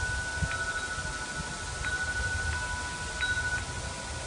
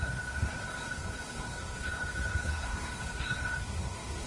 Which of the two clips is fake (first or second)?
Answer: second